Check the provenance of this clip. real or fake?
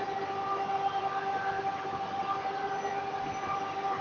real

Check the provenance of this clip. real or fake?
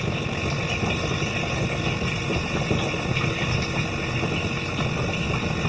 real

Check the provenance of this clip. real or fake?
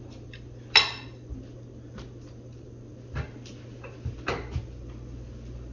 real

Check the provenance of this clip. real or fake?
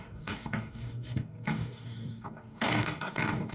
fake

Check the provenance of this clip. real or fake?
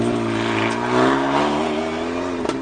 real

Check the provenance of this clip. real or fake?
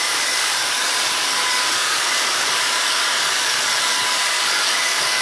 fake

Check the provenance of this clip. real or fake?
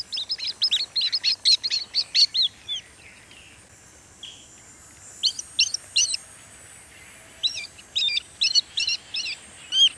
real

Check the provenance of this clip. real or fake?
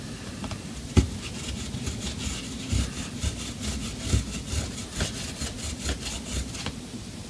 real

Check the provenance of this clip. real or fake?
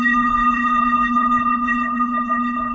fake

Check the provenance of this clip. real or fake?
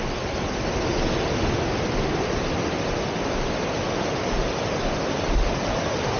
real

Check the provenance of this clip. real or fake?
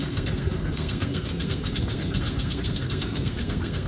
fake